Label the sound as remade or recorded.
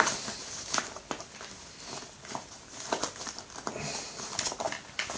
recorded